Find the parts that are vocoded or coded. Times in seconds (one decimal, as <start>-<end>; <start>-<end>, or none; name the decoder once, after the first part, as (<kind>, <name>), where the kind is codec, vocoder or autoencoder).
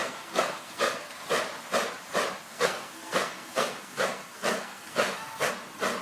0.0-1.1 (codec, SNAC); 2.5-5.5